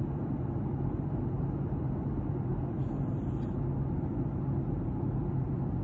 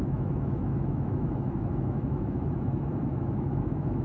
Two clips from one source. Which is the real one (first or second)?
first